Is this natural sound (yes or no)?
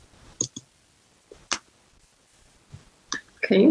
yes